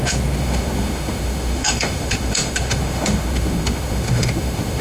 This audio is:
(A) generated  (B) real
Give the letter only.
A